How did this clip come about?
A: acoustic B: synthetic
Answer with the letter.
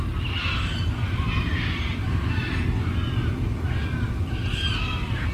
A